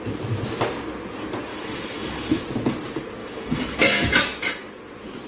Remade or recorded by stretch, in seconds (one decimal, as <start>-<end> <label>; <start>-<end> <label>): 0.0-1.5 recorded; 1.5-2.4 remade; 2.4-3.2 recorded; 3.2-4.5 remade; 4.5-5.3 recorded